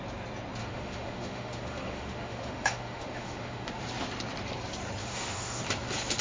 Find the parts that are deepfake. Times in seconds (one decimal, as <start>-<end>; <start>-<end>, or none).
0.6-3.8; 5.0-5.6